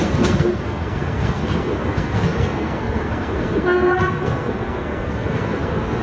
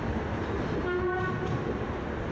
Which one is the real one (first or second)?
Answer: second